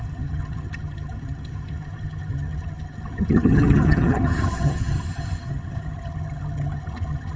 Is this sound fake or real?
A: fake